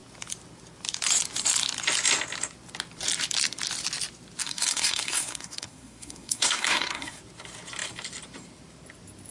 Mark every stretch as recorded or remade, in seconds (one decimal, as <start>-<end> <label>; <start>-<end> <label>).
0.0-4.4 recorded; 4.4-7.2 remade; 7.2-9.3 recorded

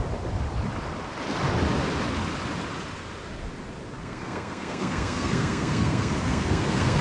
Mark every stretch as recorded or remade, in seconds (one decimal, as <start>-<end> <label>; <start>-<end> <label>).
0.0-4.0 recorded; 4.0-7.0 remade

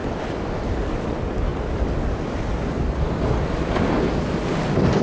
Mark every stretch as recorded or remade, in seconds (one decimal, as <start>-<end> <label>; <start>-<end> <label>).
0.0-5.0 recorded

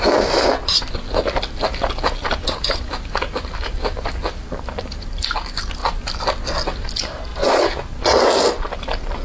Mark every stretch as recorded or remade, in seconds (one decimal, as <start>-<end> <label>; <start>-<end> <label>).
0.0-9.2 recorded

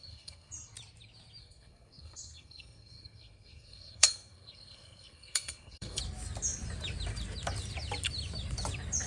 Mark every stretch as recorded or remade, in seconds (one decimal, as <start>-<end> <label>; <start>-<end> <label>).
0.0-0.5 remade; 0.5-1.4 recorded; 1.4-6.0 remade; 6.0-9.1 recorded